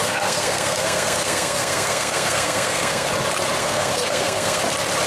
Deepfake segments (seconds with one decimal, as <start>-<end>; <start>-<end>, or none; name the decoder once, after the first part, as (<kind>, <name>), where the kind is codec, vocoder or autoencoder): 0.0-3.1 (codec, SNAC); 3.6-4.6